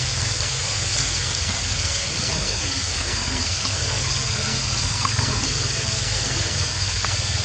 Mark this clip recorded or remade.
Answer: remade